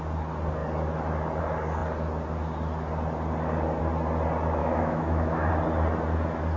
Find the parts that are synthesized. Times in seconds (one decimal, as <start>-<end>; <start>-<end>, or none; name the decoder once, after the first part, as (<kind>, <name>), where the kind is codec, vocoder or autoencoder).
4.6-5.5 (autoencoder, DAC-VAE)